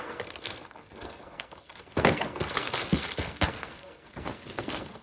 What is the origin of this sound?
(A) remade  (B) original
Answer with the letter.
A